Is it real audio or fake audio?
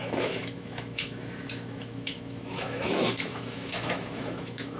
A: fake